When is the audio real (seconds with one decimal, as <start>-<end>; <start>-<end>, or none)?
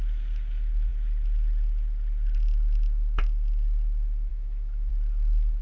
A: 0.0-4.3; 4.9-5.6